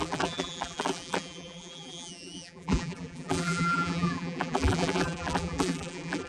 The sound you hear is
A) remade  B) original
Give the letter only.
A